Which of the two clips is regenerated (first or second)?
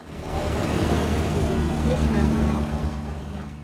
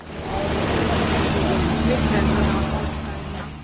first